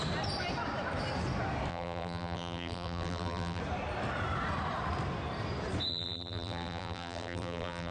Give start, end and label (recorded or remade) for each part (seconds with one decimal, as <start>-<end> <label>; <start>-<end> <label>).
0.0-1.7 recorded; 1.7-3.6 remade; 3.6-5.9 recorded; 5.9-7.9 remade